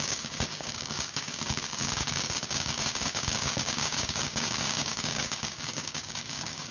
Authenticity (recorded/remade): remade